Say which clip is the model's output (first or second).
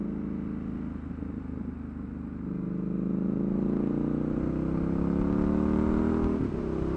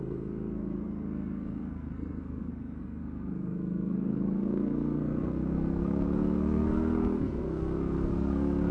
second